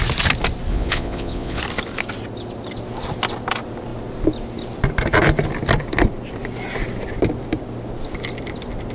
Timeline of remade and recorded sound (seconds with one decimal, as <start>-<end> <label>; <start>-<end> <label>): 0.0-0.7 recorded; 0.7-1.6 remade; 1.6-8.9 recorded